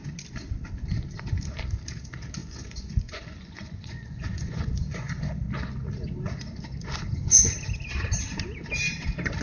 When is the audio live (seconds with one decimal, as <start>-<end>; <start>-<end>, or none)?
0.0-2.4; 5.2-9.4